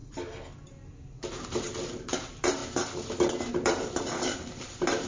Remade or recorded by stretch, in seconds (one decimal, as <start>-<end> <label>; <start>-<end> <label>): 0.0-1.2 recorded; 1.2-2.6 remade; 2.6-3.5 recorded; 3.5-5.1 remade